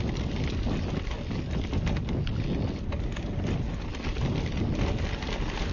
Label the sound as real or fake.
real